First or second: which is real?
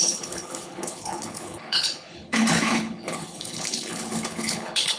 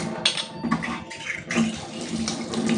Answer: second